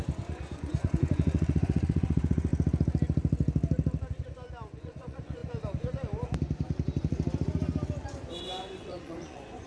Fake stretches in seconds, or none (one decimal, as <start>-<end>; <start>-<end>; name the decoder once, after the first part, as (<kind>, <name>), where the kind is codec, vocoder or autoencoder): 0.0-2.5 (vocoder, Vocos); 4.8-5.4; 8.4-9.7